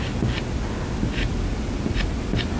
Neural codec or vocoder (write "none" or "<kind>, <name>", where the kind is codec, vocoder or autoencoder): none